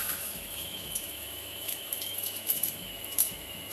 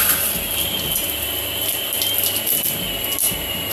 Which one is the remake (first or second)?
first